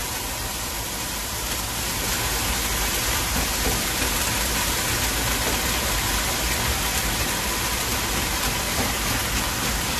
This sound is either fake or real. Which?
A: real